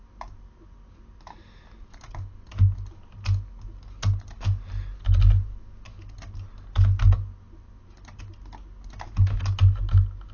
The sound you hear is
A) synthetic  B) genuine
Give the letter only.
B